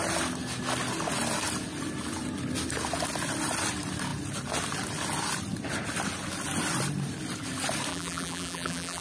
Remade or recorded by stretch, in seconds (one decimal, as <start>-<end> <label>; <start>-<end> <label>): 0.0-7.9 recorded; 7.9-9.0 remade